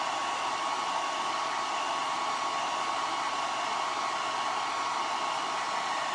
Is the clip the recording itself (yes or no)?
yes